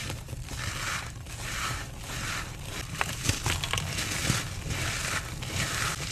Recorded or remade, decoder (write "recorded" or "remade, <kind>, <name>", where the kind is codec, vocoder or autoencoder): recorded